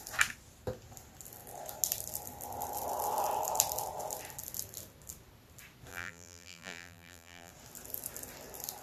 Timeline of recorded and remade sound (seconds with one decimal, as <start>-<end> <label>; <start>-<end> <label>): 0.0-5.9 recorded; 5.9-7.5 remade; 7.5-8.8 recorded